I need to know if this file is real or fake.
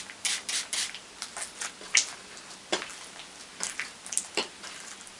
real